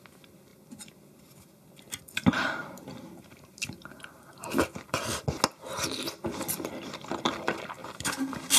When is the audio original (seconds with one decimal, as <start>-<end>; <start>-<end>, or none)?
0.0-2.6; 5.0-7.8